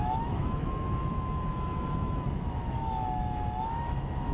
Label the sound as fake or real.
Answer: fake